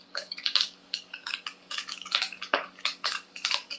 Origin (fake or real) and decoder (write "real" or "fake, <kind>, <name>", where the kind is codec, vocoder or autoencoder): fake, codec, DAC